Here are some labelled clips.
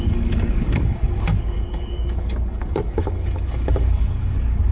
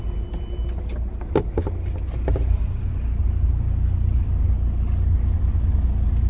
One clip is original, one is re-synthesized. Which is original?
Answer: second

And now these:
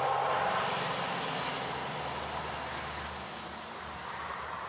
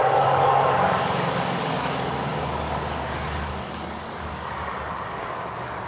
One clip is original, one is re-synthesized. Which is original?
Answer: first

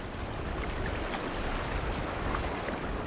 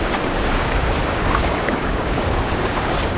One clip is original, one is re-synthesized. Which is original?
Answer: first